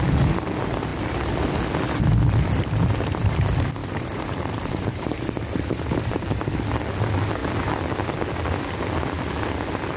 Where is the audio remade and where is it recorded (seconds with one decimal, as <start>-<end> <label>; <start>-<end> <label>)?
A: 0.0-3.8 recorded; 3.8-5.3 remade; 5.3-10.0 recorded